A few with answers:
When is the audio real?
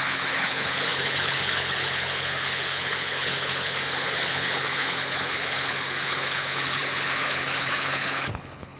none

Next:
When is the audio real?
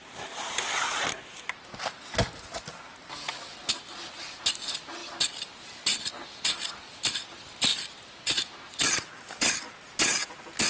0.0-10.7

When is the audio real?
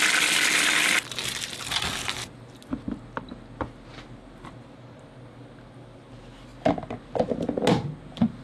0.0-8.4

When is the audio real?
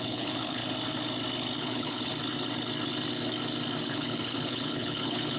0.6-1.6; 2.1-3.8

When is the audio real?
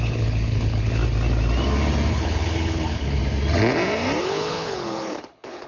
1.0-2.1; 3.2-4.2